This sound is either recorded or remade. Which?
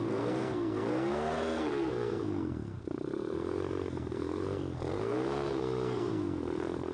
remade